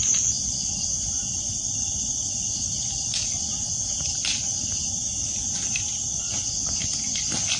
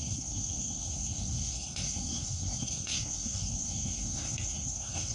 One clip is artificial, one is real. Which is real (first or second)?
first